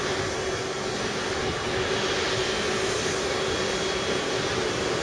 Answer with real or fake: real